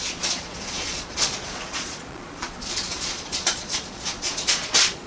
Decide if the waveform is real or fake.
fake